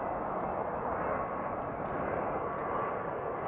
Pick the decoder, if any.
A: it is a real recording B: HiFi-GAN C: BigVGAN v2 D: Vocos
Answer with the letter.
A